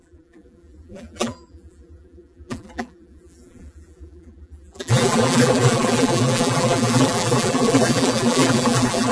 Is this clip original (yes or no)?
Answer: no